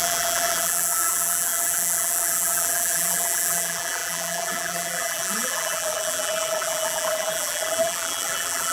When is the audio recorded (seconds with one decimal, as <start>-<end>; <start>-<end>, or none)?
none